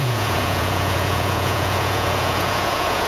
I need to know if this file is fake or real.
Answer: fake